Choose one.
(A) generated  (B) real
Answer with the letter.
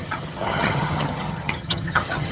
A